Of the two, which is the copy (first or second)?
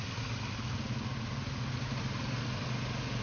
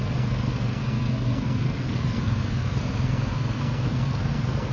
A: second